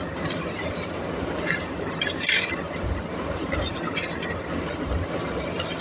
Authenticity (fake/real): fake